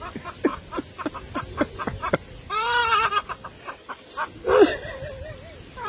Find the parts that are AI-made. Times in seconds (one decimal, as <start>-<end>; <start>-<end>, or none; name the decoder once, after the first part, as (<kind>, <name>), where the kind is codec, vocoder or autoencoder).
0.0-2.8 (vocoder, BigVGAN v2); 3.9-5.9